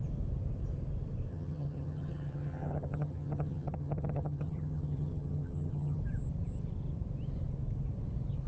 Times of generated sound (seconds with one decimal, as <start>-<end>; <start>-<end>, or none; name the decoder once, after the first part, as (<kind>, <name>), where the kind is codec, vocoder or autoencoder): 1.3-6.0 (vocoder, HiFi-GAN)